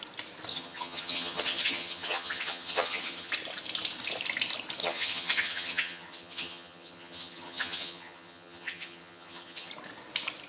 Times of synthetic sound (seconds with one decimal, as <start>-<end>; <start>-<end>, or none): 0.5-3.3; 4.8-9.7